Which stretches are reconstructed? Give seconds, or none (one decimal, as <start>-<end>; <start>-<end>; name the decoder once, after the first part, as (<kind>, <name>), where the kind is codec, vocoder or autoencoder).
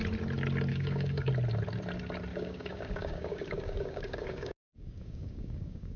0.7-1.3 (codec, DAC); 2.3-6.0